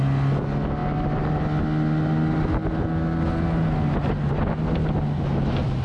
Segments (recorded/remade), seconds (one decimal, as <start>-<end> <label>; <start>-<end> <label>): 0.0-5.8 recorded